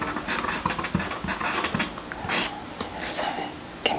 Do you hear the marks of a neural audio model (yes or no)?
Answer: no